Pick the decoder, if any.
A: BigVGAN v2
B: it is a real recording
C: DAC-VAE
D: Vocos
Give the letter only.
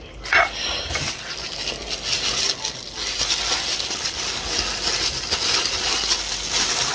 B